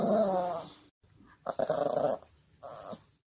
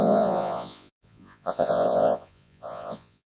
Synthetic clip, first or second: second